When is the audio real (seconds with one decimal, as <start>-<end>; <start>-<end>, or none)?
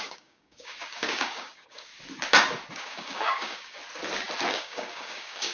1.9-2.7; 3.8-4.5